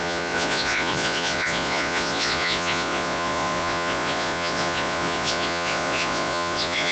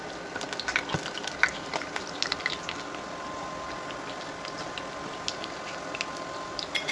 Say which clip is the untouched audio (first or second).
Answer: second